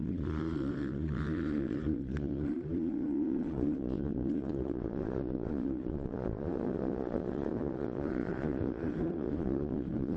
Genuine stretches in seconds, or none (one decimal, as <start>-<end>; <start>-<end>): none